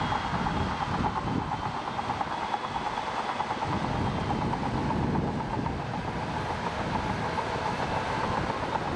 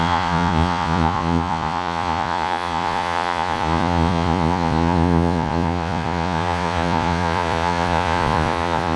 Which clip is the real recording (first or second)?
first